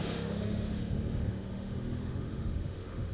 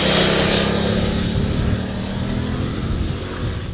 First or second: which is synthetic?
first